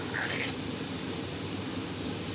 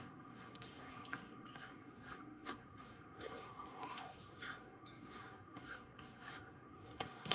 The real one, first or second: first